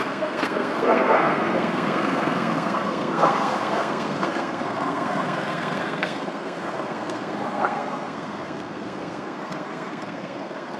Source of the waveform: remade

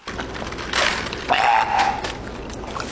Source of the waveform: recorded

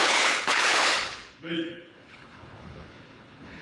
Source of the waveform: remade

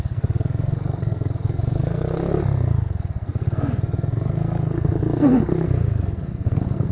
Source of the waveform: remade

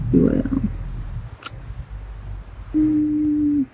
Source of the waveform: recorded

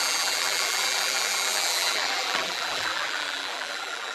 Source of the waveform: remade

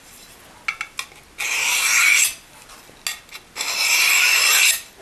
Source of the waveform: recorded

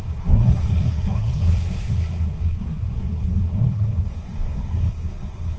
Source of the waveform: remade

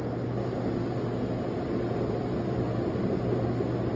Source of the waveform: recorded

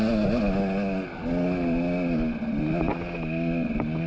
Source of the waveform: recorded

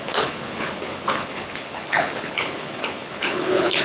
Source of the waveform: remade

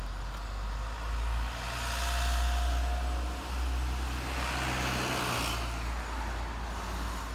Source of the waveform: recorded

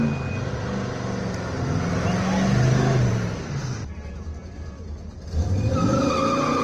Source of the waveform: recorded